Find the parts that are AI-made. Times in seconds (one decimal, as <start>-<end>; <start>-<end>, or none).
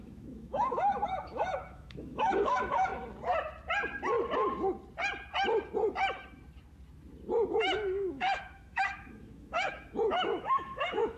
0.0-2.9; 7.5-11.2